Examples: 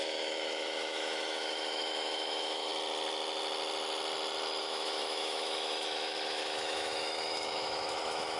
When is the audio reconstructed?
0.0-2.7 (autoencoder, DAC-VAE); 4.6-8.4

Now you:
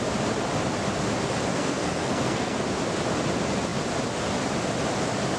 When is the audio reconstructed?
1.5-2.6 (codec, SNAC)

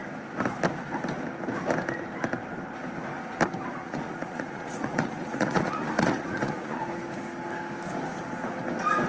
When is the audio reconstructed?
3.8-6.8 (vocoder, Vocos)

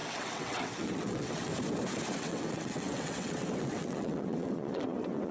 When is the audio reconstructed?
0.0-1.5 (vocoder, WaveNeXt); 2.2-5.3

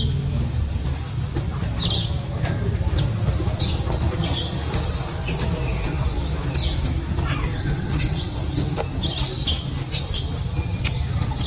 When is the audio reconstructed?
7.5-8.4 (vocoder, WaveNeXt)

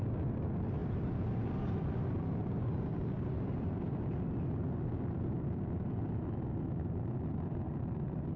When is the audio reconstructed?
none

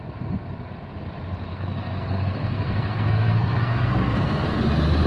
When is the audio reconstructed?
1.5-4.6 (codec, SNAC)

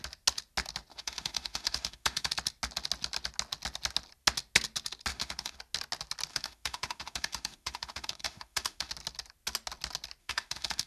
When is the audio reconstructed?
0.9-2.3 (autoencoder, DAC-VAE); 5.1-5.6; 6.3-8.9; 10.2-10.9